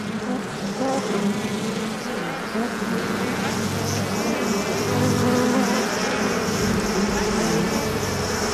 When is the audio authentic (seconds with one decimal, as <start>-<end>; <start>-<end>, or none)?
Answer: 1.5-6.2